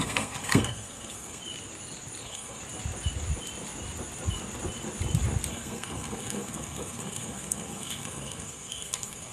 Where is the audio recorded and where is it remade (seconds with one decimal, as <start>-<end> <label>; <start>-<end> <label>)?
0.0-1.4 remade; 1.4-2.2 recorded; 2.2-2.6 remade; 2.6-5.5 recorded; 5.5-9.3 remade